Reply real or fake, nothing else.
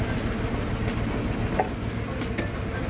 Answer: real